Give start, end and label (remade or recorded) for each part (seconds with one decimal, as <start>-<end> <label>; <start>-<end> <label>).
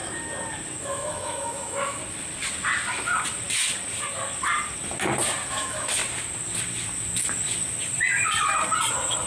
0.0-0.8 recorded; 0.8-2.0 remade; 2.0-5.5 recorded; 5.5-6.0 remade; 6.0-9.3 recorded